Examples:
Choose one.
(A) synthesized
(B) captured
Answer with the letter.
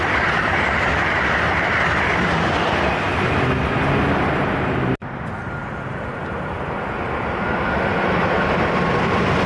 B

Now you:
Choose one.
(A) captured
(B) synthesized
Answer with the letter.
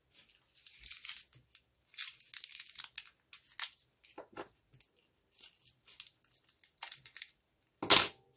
A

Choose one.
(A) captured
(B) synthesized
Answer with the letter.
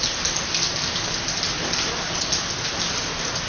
A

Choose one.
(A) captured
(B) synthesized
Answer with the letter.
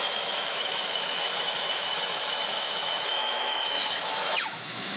B